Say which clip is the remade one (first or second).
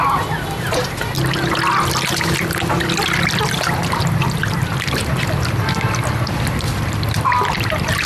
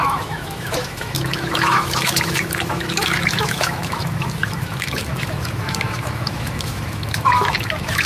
second